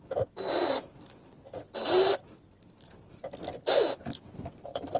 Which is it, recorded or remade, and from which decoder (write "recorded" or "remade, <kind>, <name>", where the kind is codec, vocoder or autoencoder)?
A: recorded